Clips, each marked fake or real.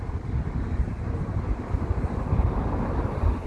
real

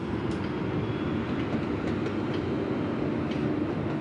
real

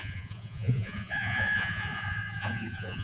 fake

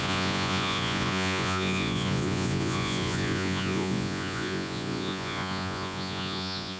fake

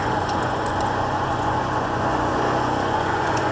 fake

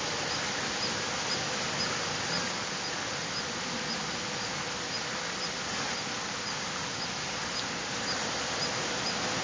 real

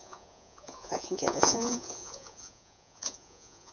fake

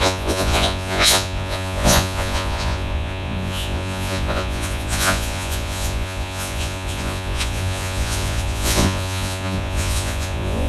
fake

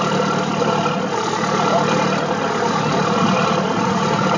real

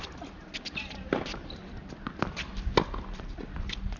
real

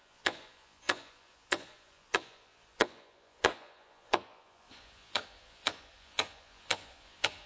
fake